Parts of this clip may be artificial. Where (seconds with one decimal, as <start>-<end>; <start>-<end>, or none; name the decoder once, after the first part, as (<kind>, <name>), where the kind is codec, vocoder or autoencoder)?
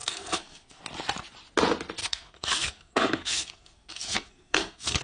0.0-0.8 (codec, SNAC); 2.0-5.0